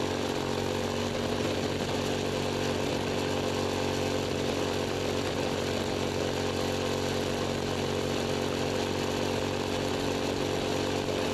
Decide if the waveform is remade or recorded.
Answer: recorded